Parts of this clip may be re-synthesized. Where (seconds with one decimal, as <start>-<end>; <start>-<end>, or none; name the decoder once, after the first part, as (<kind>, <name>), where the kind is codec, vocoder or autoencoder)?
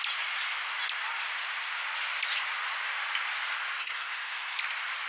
3.8-4.6 (codec, SNAC)